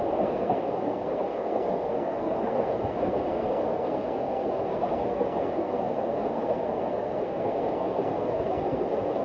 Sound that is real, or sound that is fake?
fake